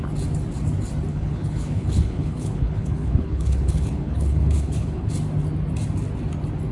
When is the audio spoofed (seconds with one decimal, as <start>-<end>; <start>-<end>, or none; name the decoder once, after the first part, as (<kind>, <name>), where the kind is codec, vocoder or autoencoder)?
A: 1.1-5.1 (codec, HILCodec)